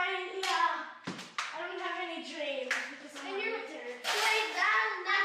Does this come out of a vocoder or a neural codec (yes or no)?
no